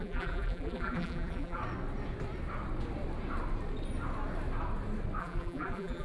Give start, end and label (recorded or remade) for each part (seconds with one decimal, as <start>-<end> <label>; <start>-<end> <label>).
0.0-1.6 remade; 1.6-5.2 recorded; 5.2-6.0 remade